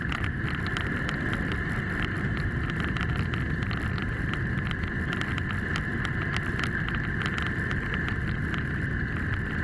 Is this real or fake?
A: real